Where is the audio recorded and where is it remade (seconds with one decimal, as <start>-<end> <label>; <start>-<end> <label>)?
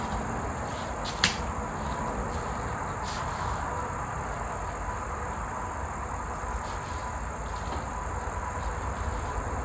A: 0.0-9.6 remade